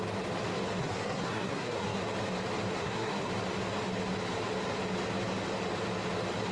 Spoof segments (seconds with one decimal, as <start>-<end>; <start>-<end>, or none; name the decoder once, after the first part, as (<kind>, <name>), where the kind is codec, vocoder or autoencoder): 0.8-2.0 (codec, SNAC); 2.8-3.3